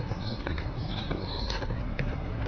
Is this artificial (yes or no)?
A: yes